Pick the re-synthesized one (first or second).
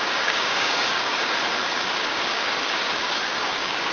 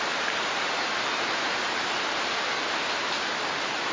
first